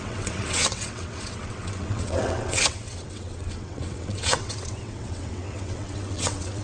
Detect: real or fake fake